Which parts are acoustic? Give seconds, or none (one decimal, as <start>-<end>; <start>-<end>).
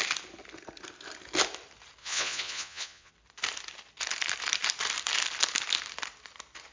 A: 0.0-2.0; 3.1-6.7